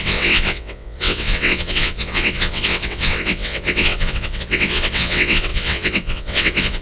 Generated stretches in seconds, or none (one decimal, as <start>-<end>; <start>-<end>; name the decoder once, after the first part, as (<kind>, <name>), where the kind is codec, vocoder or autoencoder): 0.0-6.8 (vocoder, WaveNeXt)